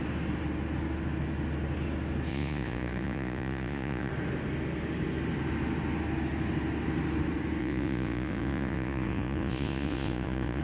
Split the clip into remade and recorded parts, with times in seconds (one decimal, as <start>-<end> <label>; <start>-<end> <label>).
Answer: 0.0-2.3 recorded; 2.3-4.1 remade; 4.1-7.6 recorded; 7.6-10.6 remade